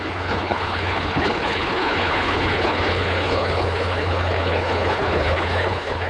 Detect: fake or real fake